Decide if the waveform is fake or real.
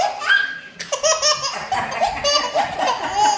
real